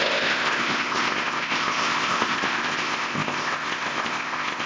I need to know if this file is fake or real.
fake